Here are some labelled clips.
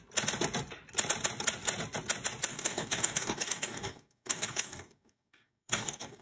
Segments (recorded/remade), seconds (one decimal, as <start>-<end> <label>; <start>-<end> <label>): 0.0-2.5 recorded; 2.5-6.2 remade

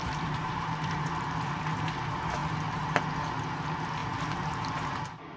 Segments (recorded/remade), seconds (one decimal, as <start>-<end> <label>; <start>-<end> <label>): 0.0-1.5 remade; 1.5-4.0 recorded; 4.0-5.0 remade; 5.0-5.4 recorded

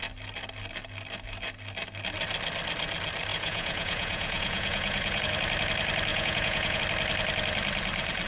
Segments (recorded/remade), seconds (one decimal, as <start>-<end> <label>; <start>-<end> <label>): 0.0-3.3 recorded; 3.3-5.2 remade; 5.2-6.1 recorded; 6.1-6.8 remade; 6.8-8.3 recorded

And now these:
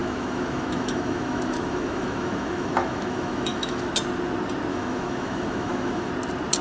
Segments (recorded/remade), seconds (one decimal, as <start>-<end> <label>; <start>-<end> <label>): 0.0-3.9 remade; 3.9-4.7 recorded; 4.7-6.1 remade; 6.1-6.6 recorded

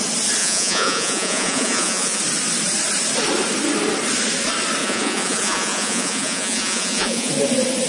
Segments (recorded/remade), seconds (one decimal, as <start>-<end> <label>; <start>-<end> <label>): 0.0-0.4 recorded; 0.4-2.2 remade; 2.2-4.8 recorded; 4.8-7.3 remade; 7.3-7.9 recorded

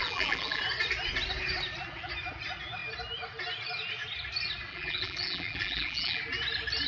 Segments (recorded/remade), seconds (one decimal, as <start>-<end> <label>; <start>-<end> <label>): 0.0-0.6 remade; 0.6-4.7 recorded; 4.7-6.2 remade; 6.2-6.9 recorded

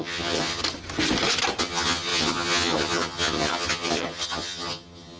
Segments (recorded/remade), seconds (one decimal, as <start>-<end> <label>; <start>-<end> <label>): 0.0-0.6 remade; 0.6-1.6 recorded; 1.6-5.2 remade

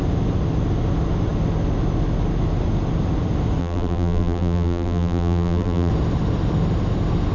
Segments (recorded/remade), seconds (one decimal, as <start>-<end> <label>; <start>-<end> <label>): 0.0-3.6 recorded; 3.6-5.9 remade; 5.9-7.3 recorded